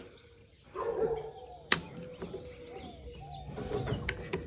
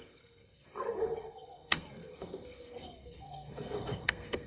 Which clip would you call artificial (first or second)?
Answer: second